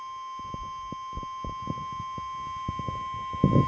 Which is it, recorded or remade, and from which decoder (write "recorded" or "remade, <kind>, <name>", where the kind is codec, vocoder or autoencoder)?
recorded